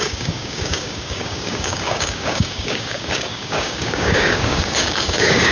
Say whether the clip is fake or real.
fake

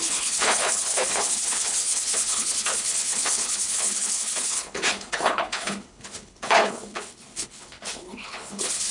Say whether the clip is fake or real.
fake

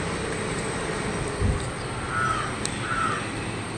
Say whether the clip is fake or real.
real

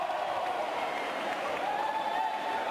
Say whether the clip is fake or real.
fake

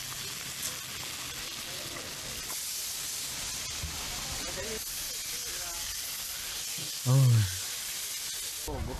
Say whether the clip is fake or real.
real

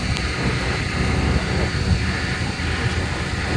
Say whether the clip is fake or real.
real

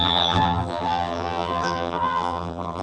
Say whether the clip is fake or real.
fake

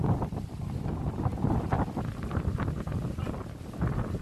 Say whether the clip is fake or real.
real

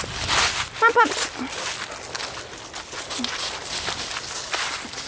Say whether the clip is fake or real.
real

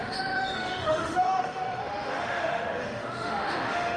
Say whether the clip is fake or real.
fake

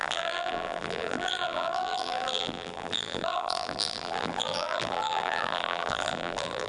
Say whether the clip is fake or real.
fake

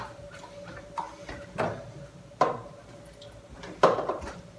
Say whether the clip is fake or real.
real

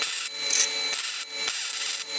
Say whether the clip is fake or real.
real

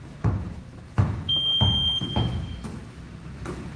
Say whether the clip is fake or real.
fake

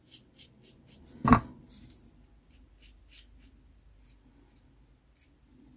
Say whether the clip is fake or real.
real